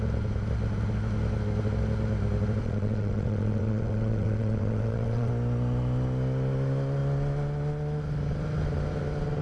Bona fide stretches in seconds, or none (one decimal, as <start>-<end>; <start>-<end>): 0.0-2.6; 5.3-9.4